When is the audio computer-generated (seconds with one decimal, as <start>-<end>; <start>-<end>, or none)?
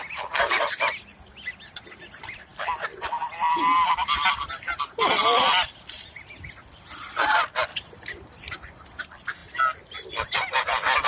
0.0-9.4; 10.1-11.1